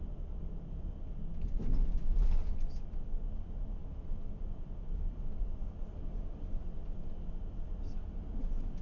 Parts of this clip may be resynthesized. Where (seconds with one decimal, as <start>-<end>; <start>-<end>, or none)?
none